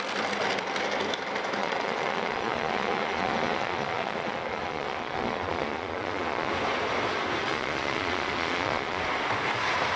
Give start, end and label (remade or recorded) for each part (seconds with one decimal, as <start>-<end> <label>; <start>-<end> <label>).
0.0-1.6 recorded; 1.6-6.5 remade; 6.5-7.4 recorded; 7.4-9.0 remade; 9.0-10.0 recorded